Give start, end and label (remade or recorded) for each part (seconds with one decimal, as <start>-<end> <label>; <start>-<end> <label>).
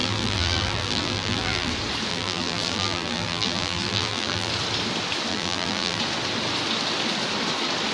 0.0-1.7 remade; 1.7-2.1 recorded; 2.1-4.5 remade; 4.5-5.3 recorded; 5.3-6.0 remade; 6.0-7.9 recorded